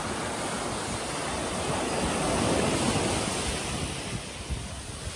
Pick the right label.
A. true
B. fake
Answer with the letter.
A